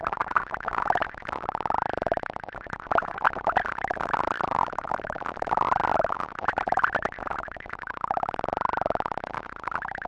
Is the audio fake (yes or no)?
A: no